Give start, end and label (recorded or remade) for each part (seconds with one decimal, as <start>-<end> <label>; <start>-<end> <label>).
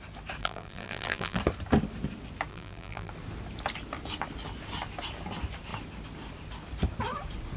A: 0.0-0.4 recorded; 0.4-1.4 remade; 1.4-2.5 recorded; 2.5-3.1 remade; 3.1-7.6 recorded